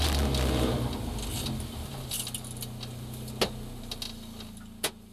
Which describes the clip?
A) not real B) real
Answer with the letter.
B